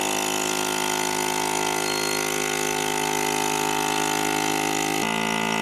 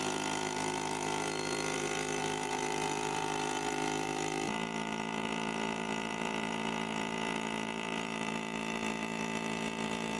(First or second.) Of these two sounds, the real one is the first